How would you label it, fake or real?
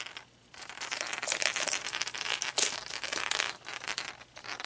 real